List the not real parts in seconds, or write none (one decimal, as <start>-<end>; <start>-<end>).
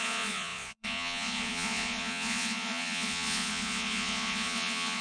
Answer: 0.0-5.0